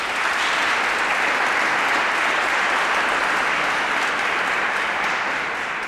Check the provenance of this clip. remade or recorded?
recorded